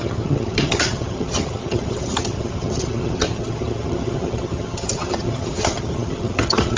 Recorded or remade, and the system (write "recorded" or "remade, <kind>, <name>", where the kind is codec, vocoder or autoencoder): remade, vocoder, HiFi-GAN